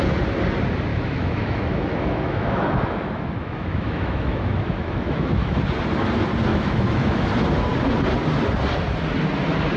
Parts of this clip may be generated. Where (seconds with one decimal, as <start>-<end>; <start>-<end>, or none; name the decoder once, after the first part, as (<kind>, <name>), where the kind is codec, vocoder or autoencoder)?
0.9-5.6 (autoencoder, DAC-VAE); 6.5-7.2